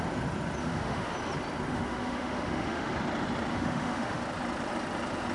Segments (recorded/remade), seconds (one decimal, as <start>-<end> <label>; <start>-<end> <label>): 0.0-0.6 recorded; 0.6-1.1 remade; 1.1-1.7 recorded; 1.7-2.9 remade; 2.9-3.5 recorded; 3.5-4.2 remade; 4.2-5.3 recorded